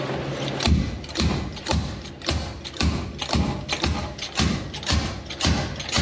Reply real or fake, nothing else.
real